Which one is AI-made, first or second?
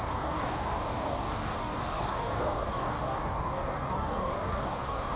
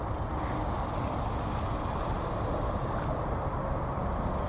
first